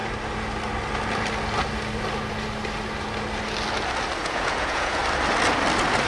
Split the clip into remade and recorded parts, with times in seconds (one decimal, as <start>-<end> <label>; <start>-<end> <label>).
0.0-4.2 recorded; 4.2-5.0 remade; 5.0-6.1 recorded